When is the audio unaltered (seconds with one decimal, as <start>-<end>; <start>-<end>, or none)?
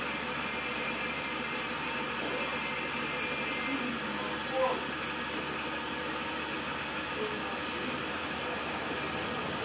0.0-0.7; 2.3-9.6